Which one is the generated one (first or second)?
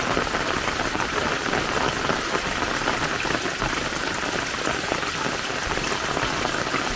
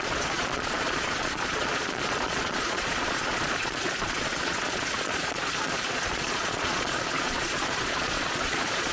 second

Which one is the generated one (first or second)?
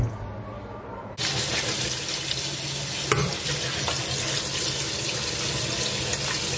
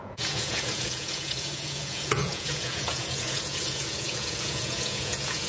second